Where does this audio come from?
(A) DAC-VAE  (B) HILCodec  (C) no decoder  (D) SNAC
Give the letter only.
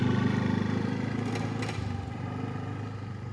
C